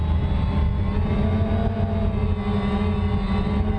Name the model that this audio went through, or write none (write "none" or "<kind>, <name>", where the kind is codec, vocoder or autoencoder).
none